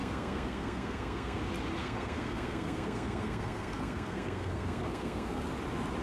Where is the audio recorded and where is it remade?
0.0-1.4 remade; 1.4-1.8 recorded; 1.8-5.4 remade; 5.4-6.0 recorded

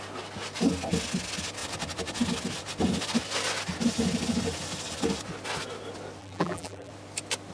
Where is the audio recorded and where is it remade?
0.0-6.2 recorded; 6.2-6.9 remade; 6.9-7.5 recorded

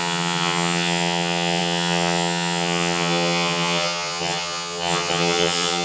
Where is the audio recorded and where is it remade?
0.0-5.8 remade

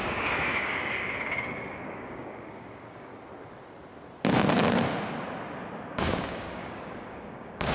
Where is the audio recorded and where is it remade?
0.0-3.1 remade; 3.1-5.9 recorded; 5.9-7.7 remade

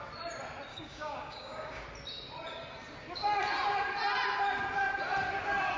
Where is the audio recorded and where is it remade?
0.0-0.7 recorded; 0.7-1.8 remade; 1.8-5.8 recorded